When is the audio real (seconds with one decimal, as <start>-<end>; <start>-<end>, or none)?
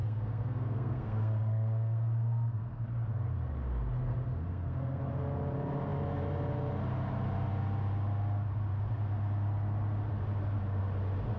2.8-4.4; 5.0-11.4